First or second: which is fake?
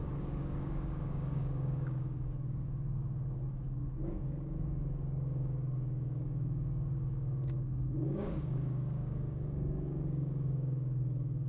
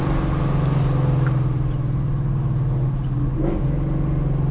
first